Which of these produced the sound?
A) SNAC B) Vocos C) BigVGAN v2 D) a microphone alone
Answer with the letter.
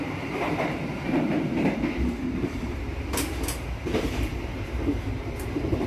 C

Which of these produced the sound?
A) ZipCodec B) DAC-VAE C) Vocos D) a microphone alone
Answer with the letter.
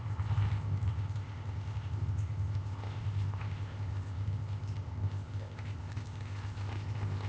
A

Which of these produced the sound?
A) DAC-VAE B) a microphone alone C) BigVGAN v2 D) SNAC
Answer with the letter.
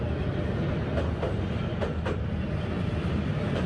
B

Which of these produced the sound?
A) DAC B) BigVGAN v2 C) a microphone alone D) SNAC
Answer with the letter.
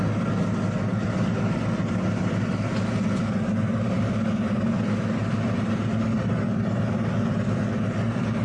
C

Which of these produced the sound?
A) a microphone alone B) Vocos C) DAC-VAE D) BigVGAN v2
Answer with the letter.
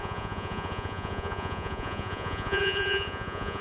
B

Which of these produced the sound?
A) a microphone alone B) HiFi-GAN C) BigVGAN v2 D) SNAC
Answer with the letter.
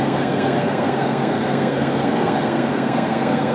D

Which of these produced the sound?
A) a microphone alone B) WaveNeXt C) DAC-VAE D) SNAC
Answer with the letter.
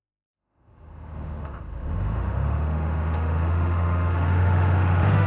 C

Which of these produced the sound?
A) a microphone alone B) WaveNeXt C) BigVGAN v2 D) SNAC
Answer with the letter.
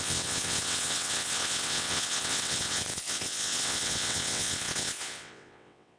B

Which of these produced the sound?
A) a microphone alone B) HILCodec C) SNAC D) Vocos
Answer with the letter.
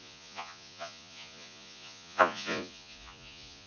D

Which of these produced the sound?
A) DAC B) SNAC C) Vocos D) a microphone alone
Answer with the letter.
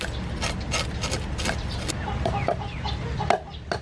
D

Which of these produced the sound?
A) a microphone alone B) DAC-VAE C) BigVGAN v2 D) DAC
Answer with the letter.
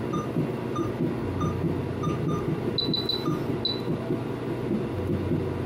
A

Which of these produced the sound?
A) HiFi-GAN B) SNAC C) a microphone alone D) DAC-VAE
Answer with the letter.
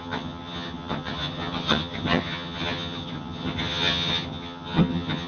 A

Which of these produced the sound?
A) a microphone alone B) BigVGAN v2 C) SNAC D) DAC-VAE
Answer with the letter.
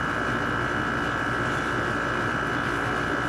A